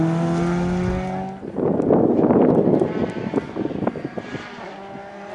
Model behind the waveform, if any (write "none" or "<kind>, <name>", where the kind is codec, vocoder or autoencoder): none